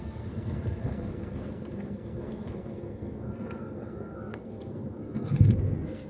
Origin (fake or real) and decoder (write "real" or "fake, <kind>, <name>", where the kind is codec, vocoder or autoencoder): fake, codec, SNAC